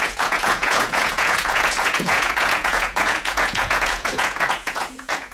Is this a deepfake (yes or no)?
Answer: yes